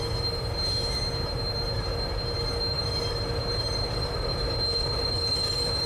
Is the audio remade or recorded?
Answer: recorded